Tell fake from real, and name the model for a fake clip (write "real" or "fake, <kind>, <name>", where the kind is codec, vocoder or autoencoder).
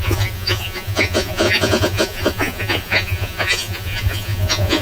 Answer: fake, vocoder, Vocos